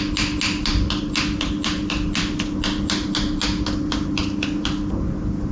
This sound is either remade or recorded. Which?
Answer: recorded